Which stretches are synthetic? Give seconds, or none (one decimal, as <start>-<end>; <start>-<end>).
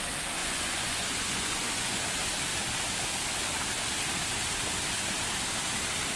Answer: 0.4-2.0